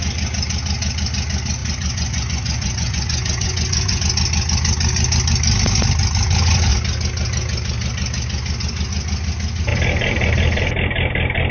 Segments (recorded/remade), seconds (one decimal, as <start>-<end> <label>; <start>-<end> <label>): 0.0-1.6 recorded; 1.6-4.0 remade; 4.0-11.5 recorded